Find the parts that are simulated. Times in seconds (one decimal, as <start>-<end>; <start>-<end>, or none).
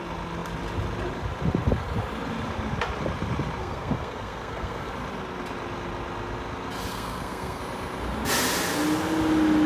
3.6-4.9; 6.9-7.6